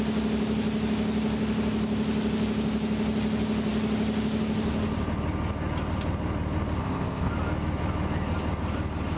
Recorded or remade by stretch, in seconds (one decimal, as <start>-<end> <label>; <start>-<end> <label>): 0.0-6.8 recorded; 6.8-7.3 remade; 7.3-9.2 recorded